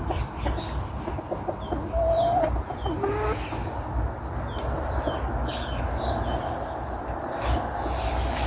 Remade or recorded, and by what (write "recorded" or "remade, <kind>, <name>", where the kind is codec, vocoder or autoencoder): recorded